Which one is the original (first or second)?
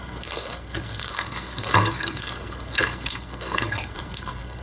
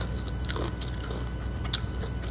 second